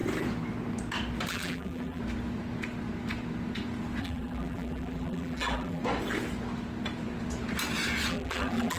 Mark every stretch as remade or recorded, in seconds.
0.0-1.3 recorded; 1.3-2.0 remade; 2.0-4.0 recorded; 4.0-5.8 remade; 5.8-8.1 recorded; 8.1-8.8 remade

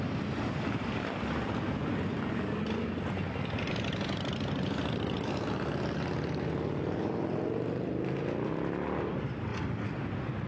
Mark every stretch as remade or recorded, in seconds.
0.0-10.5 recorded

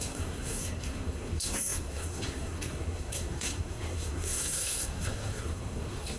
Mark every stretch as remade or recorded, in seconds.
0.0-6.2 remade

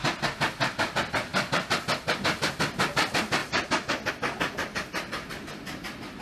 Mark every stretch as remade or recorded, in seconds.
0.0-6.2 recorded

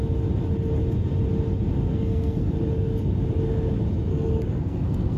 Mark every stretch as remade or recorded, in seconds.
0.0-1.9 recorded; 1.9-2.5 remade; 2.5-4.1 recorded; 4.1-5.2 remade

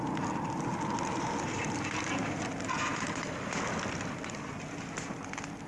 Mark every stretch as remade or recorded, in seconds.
0.0-5.7 recorded